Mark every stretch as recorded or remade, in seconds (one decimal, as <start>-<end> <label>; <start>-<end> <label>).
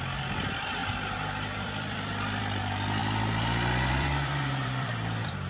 0.0-5.5 remade